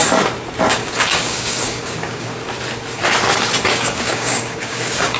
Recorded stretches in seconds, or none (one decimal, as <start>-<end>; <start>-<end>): 0.0-0.7; 2.3-3.7

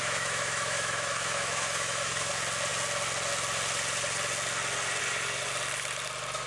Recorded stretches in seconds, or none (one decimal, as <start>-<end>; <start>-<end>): 2.3-6.5

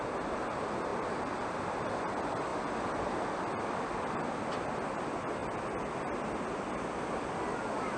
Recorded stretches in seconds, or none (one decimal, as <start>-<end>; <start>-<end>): 0.0-8.0

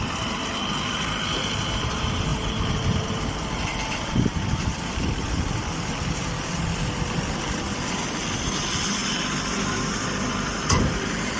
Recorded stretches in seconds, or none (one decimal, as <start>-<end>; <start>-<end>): 9.0-9.8

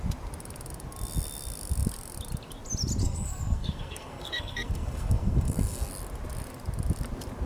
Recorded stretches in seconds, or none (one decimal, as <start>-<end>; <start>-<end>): 0.0-3.0; 5.9-7.5

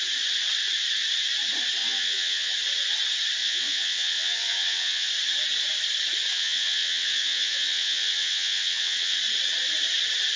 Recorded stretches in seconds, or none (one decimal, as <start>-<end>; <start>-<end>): 0.0-1.8; 2.5-3.4; 5.1-6.3; 9.2-10.4